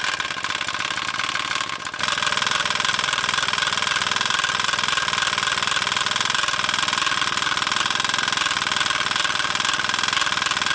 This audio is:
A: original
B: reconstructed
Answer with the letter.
A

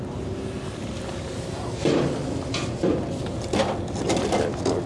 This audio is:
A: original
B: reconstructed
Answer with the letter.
A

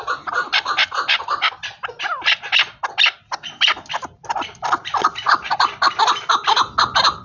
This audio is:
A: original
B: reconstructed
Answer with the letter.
A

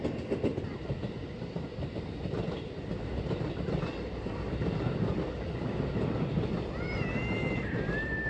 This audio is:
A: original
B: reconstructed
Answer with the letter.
B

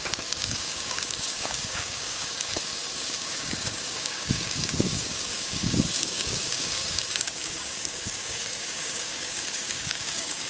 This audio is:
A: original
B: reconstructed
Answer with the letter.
B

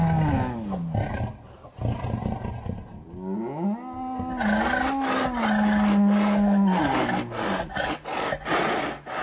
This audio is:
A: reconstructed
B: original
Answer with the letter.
B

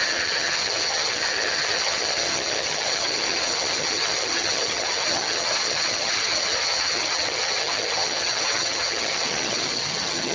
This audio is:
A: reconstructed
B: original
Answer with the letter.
A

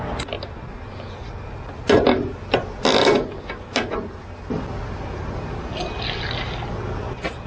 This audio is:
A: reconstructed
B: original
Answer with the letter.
B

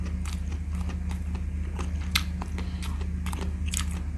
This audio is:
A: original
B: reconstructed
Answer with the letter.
A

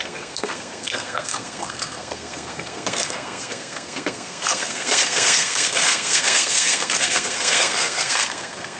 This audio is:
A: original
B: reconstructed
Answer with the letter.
B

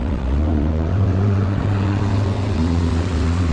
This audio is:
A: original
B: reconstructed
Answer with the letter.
B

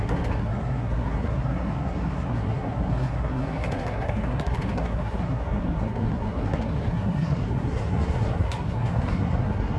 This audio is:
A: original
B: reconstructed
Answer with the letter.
B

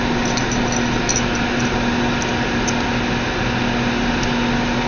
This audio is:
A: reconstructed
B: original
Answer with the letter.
B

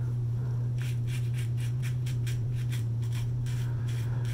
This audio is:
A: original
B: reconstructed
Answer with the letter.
B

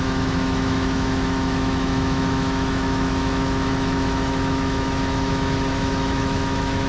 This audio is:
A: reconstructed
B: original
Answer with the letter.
A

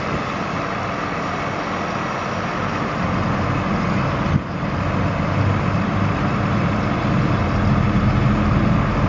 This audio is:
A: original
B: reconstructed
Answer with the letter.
A